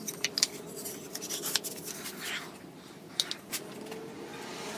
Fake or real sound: real